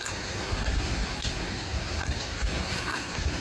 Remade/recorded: remade